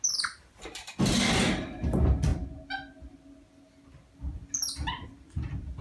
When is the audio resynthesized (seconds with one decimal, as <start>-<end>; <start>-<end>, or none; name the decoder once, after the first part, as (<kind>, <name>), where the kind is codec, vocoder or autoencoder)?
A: none